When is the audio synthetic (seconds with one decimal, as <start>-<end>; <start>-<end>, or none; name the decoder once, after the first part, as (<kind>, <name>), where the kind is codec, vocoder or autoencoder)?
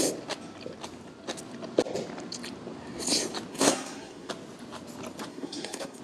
3.5-4.3 (codec, SNAC); 5.3-6.0